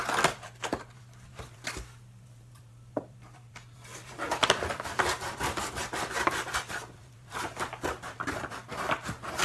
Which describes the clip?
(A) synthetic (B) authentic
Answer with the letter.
A